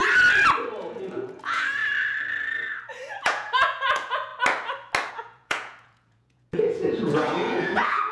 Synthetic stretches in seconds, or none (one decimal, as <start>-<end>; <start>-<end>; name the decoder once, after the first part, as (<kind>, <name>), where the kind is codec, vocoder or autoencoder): 0.8-1.8 (vocoder, Vocos); 3.2-4.3; 5.1-8.1